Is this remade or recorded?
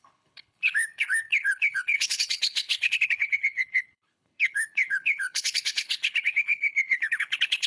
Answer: remade